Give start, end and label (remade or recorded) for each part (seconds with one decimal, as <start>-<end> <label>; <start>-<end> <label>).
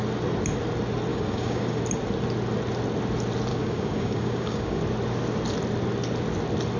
0.0-1.1 recorded; 1.1-1.8 remade; 1.8-3.5 recorded; 3.5-4.8 remade; 4.8-6.8 recorded